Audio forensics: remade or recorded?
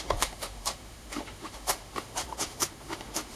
remade